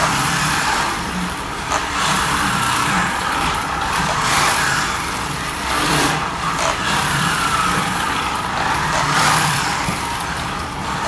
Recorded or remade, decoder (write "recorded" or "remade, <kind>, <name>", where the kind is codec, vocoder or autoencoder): remade, vocoder, BigVGAN v2